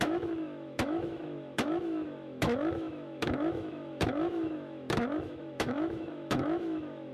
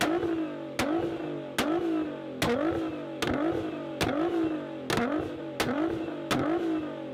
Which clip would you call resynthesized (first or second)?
first